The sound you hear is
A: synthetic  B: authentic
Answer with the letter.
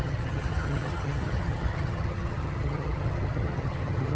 A